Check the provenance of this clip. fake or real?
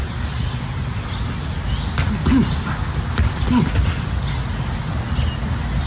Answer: real